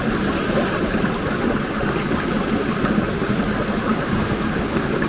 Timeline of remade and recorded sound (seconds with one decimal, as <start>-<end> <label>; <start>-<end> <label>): 0.0-3.9 recorded; 3.9-5.1 remade